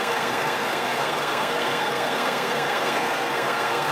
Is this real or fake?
fake